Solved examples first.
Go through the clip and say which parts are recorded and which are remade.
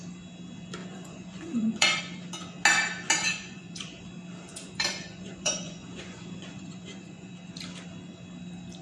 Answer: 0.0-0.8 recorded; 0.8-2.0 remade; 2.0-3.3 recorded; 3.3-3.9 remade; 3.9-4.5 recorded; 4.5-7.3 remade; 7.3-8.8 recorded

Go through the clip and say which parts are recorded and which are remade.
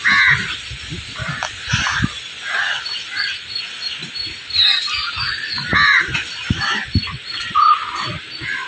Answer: 0.0-8.7 recorded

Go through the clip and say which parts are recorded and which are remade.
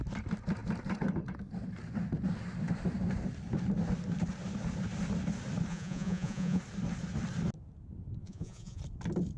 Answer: 0.0-5.7 recorded; 5.7-6.6 remade; 6.6-8.2 recorded; 8.2-8.8 remade; 8.8-9.4 recorded